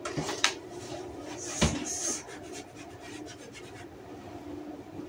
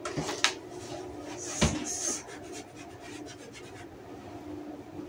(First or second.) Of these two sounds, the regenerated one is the first